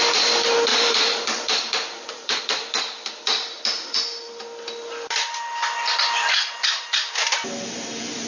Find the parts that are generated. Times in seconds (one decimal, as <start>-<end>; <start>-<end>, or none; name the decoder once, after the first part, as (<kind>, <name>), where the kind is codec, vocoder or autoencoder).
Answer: 0.7-2.4 (vocoder, BigVGAN v2)